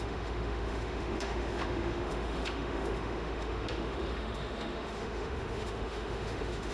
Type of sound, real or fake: fake